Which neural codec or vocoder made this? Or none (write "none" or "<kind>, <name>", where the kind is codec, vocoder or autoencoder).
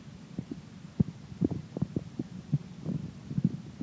none